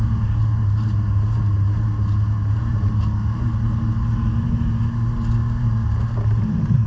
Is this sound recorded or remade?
recorded